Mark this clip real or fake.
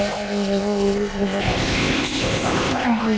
fake